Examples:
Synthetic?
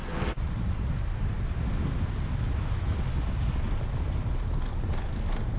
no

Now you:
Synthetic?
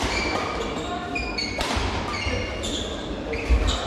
no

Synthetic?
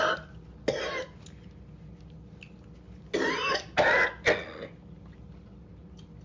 no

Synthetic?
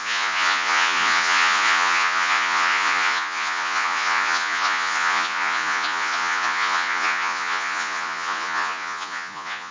yes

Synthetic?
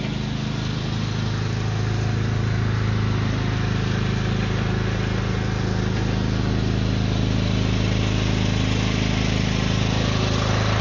no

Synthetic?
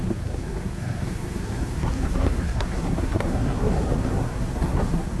yes